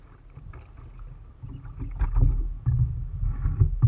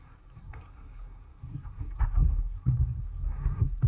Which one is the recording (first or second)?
first